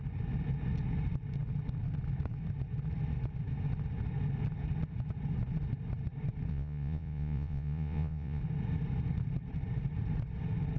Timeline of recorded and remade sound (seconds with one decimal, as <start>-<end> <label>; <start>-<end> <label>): 0.0-6.5 recorded; 6.5-8.4 remade; 8.4-10.8 recorded